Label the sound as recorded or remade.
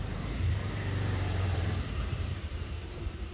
remade